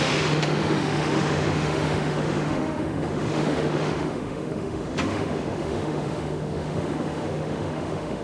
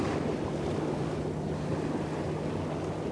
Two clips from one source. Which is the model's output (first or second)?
first